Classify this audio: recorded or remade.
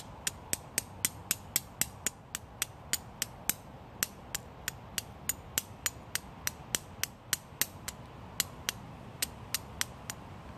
recorded